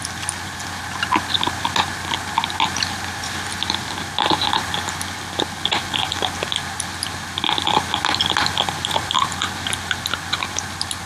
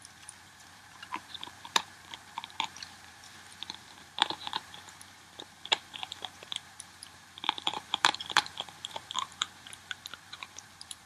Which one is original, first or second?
first